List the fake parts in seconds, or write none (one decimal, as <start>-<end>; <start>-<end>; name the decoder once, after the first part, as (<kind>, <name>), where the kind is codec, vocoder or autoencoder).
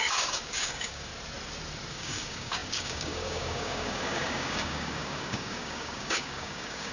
0.0-1.1 (codec, DAC); 1.9-6.9